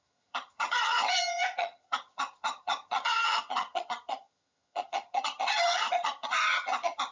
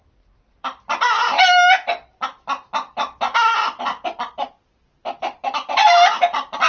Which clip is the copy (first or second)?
first